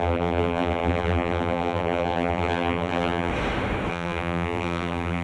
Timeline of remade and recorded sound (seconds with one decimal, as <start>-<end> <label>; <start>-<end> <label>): 0.0-3.3 remade; 3.3-3.9 recorded; 3.9-5.2 remade